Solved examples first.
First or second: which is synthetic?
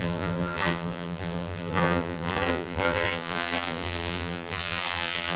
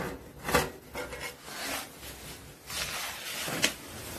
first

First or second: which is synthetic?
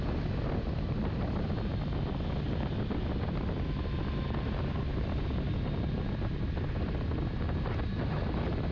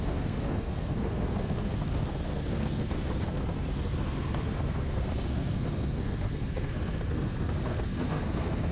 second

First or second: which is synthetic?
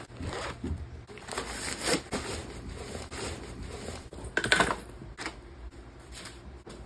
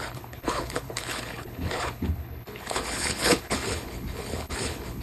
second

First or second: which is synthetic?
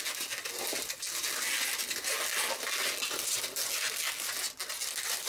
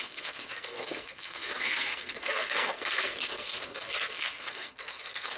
second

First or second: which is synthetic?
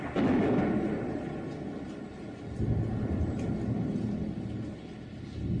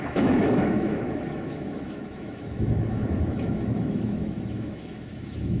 second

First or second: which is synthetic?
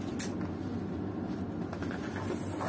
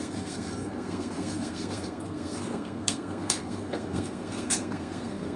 second